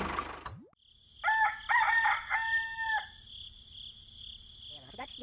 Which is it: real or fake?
real